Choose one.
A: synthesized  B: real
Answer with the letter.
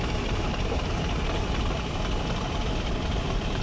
A